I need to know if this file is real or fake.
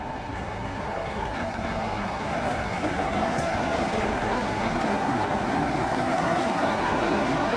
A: fake